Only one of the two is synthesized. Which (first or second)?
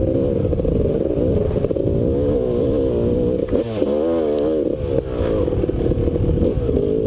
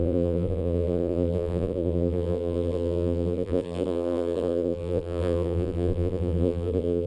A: second